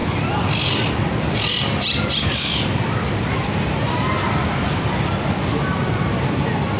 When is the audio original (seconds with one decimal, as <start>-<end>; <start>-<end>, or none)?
0.0-6.8